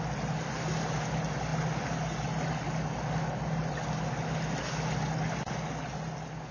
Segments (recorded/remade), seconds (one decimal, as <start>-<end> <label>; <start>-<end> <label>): 0.0-6.5 recorded

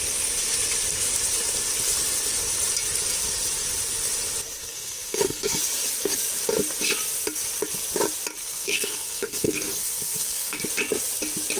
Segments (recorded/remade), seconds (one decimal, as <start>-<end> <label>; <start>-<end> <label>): 0.0-4.6 recorded; 4.6-5.6 remade; 5.6-8.4 recorded; 8.4-10.6 remade; 10.6-11.6 recorded

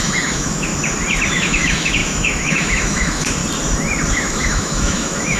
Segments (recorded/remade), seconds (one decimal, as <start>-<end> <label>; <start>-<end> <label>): 0.0-0.7 remade; 0.7-1.3 recorded; 1.3-3.4 remade; 3.4-4.1 recorded; 4.1-5.4 remade